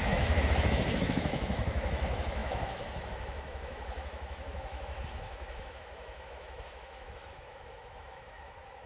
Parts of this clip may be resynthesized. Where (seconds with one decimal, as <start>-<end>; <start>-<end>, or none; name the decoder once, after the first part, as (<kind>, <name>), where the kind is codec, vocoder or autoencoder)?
0.0-8.9 (autoencoder, DAC-VAE)

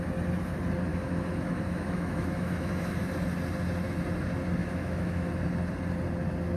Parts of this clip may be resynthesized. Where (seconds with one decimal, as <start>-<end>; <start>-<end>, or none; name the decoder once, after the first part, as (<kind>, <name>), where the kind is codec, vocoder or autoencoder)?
0.9-3.1 (autoencoder, DAC-VAE); 4.6-5.3

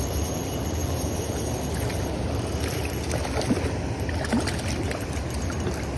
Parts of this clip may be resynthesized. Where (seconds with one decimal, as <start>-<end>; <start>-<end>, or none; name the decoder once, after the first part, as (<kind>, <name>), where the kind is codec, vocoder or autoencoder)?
none